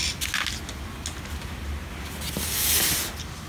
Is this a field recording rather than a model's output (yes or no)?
yes